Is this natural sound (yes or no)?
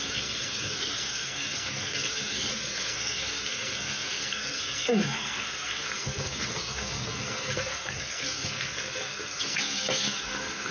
no